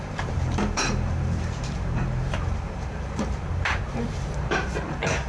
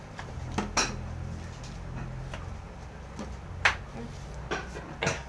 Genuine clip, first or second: second